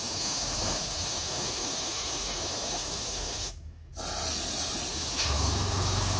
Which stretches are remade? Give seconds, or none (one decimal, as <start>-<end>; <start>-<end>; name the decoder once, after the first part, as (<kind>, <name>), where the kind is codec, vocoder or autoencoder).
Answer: 0.0-3.9 (autoencoder, DAC-VAE); 4.9-6.2

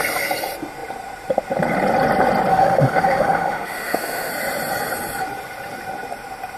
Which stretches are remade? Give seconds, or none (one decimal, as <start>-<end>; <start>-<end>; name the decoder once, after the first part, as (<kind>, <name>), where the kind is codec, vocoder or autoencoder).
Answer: 2.5-4.3 (autoencoder, DAC-VAE)

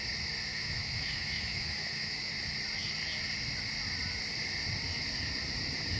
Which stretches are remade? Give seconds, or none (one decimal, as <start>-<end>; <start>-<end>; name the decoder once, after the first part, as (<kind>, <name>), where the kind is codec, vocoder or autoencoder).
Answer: 0.5-2.3 (autoencoder, DAC-VAE)

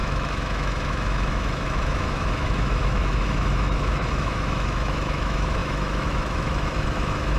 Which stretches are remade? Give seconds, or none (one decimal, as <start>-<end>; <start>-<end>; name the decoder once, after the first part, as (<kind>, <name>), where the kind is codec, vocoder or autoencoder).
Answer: 0.0-7.4 (autoencoder, DAC-VAE)

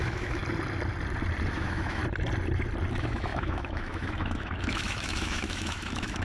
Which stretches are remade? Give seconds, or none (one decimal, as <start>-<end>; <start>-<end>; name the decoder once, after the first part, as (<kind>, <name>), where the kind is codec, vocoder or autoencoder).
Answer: 0.0-0.4 (autoencoder, DAC-VAE); 1.5-2.0; 2.9-6.2

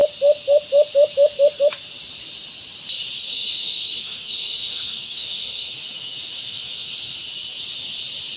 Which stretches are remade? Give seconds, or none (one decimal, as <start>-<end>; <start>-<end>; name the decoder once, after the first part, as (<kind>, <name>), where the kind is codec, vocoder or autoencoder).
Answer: 3.3-7.2 (autoencoder, DAC-VAE)

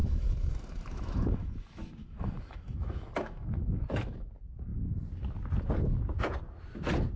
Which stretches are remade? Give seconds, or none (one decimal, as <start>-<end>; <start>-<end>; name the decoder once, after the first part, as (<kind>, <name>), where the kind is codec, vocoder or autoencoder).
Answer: 0.0-4.3 (autoencoder, DAC-VAE)